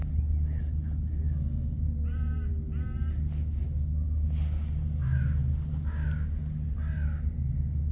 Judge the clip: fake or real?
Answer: real